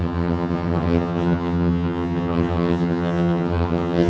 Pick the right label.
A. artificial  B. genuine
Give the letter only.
A